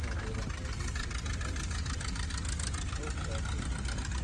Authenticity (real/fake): real